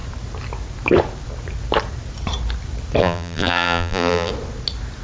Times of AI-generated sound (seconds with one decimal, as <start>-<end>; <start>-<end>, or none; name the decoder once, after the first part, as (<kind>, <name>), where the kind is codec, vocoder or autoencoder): 3.0-4.3 (vocoder, BigVGAN v2)